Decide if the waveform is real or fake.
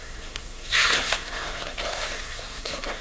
fake